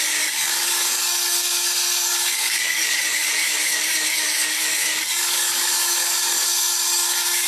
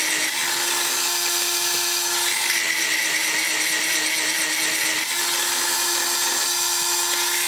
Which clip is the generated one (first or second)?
first